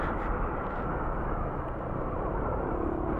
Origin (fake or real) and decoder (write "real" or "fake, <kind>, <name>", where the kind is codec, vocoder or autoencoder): real